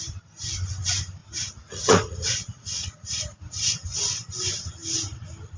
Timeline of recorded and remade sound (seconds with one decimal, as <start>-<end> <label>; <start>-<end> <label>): 0.0-1.2 recorded; 1.2-3.4 remade; 3.4-5.6 recorded